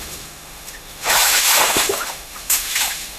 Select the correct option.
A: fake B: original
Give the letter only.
A